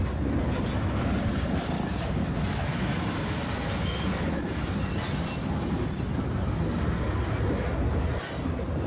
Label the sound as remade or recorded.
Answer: recorded